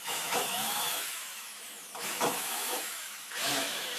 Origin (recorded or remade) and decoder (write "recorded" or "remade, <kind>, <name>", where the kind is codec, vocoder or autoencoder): remade, autoencoder, DAC-VAE